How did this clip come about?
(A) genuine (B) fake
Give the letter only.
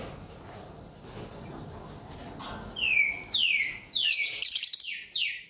A